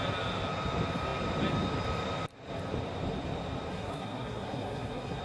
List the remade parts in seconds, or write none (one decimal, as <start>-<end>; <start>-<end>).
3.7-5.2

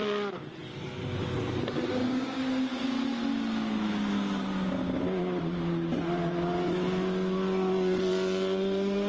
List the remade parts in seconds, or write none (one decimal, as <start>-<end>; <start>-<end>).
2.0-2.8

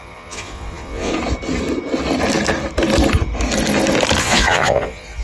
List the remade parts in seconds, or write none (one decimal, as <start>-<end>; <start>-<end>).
0.0-1.1; 4.2-5.2

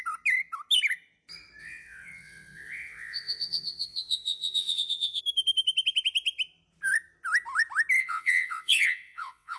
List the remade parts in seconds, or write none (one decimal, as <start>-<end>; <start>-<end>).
1.6-5.2; 8.0-9.6

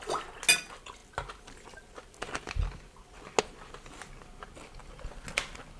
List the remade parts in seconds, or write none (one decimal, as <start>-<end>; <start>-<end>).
none

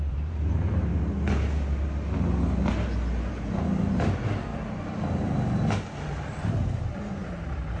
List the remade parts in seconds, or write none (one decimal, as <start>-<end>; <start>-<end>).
0.0-0.9; 3.3-4.5; 6.0-7.8